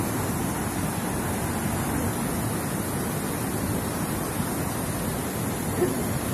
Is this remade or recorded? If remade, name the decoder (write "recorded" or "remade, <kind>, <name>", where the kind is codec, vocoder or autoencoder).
recorded